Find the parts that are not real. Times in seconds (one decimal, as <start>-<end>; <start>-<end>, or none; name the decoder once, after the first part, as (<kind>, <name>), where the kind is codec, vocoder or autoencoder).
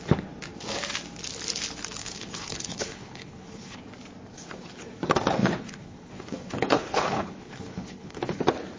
2.0-3.8 (codec, HILCodec); 5.4-8.4